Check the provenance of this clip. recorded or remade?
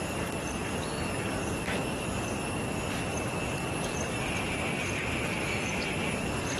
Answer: recorded